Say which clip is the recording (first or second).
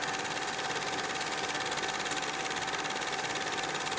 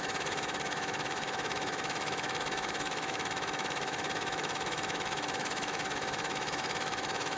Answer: first